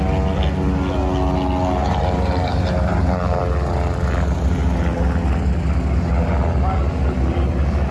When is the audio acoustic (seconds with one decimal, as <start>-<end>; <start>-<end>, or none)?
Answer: 0.0-1.8; 3.4-7.9